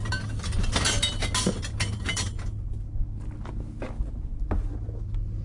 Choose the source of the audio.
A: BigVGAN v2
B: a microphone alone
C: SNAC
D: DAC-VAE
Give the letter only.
B